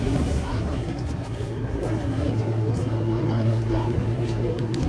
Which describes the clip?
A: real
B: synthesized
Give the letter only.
B